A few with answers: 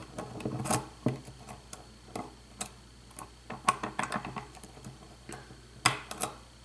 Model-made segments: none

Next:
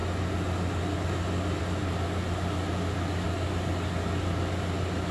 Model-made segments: none

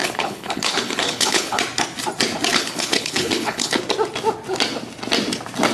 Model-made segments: 0.0-1.6 (codec, HILCodec); 2.5-3.8

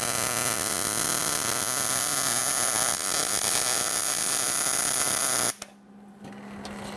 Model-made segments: none

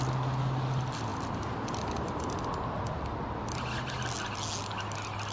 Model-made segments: 1.1-2.4 (vocoder, BigVGAN v2)

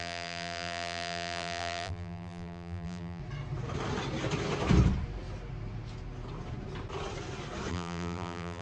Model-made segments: 0.0-3.2 (vocoder, BigVGAN v2); 7.7-8.6